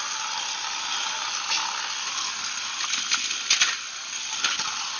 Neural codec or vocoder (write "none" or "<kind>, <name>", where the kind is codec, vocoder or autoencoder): none